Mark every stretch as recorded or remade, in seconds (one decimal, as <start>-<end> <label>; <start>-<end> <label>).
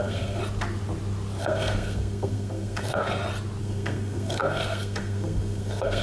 0.0-0.4 remade; 0.4-1.4 recorded; 1.4-3.0 remade; 3.0-3.6 recorded; 3.6-6.0 remade